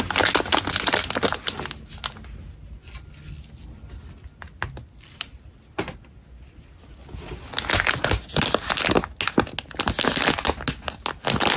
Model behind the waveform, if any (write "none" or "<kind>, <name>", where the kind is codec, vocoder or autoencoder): none